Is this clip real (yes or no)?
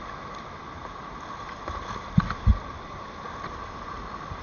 yes